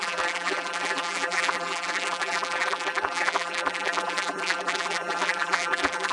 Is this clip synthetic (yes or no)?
yes